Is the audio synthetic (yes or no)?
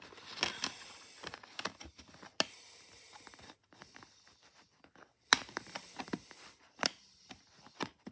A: no